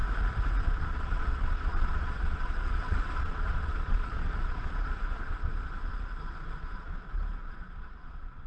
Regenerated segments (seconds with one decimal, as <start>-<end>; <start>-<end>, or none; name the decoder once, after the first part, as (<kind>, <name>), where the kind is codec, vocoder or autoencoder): 0.6-8.5 (vocoder, Vocos)